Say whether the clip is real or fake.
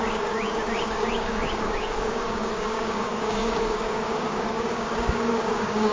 fake